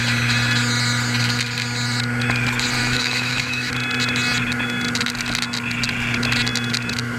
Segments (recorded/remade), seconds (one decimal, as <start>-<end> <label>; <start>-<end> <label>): 0.0-2.8 recorded; 2.8-3.7 remade; 3.7-7.2 recorded